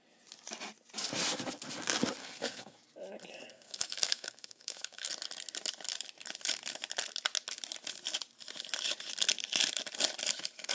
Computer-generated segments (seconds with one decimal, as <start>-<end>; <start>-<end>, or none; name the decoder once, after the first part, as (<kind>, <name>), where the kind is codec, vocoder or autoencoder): 2.2-2.8 (codec, SNAC); 3.5-5.1